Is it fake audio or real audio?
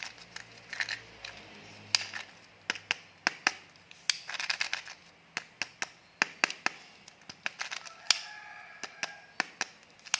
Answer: real